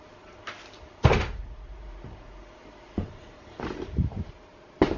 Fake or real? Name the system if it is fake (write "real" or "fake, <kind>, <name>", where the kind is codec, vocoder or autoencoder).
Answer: fake, vocoder, BigVGAN v2